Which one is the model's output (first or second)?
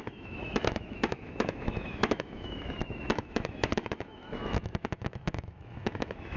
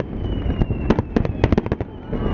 first